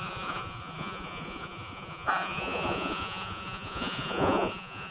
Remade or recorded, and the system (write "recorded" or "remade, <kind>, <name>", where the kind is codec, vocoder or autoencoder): remade, vocoder, Vocos